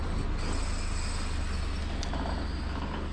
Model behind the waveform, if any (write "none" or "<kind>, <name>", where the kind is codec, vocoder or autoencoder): none